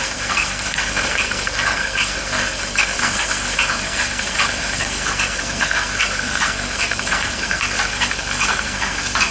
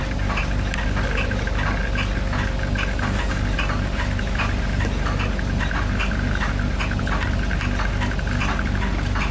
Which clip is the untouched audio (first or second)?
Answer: second